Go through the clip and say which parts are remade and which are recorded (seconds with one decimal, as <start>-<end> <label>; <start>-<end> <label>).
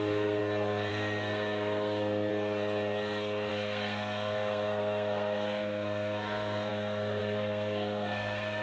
0.0-0.4 remade; 0.4-0.9 recorded; 0.9-2.3 remade; 2.3-3.5 recorded; 3.5-8.6 remade